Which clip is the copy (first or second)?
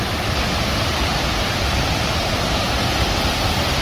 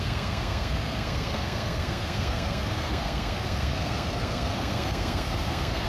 second